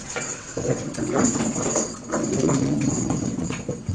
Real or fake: fake